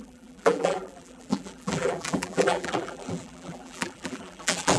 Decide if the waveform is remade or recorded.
remade